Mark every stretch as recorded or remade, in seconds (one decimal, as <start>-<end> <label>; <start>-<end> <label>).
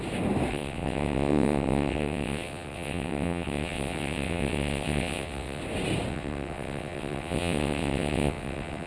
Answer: 0.0-0.5 recorded; 0.5-5.6 remade; 5.6-6.1 recorded; 6.1-8.9 remade